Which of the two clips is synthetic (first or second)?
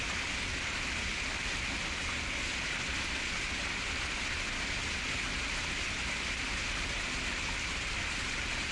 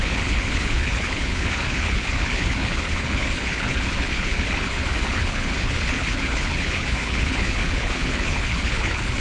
second